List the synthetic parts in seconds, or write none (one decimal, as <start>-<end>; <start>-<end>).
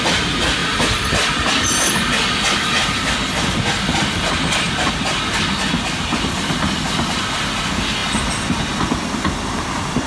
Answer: 0.6-1.3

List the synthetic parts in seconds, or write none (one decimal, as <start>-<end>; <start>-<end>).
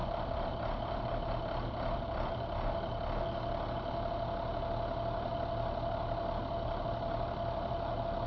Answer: 0.0-2.3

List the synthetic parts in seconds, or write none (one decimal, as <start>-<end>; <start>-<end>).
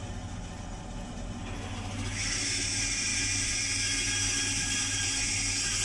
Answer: 3.1-3.7; 4.6-5.3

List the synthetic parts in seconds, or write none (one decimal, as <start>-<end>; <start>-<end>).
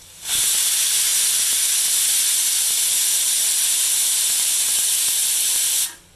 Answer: 5.2-5.8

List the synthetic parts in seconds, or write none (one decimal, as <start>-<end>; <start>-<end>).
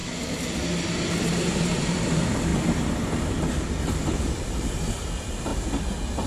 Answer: 1.4-2.5; 3.9-5.5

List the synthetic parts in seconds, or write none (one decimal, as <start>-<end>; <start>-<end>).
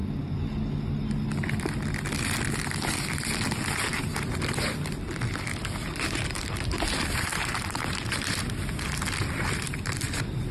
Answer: 5.8-6.5; 7.3-8.6